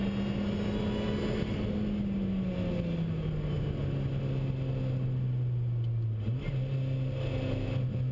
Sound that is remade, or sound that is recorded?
recorded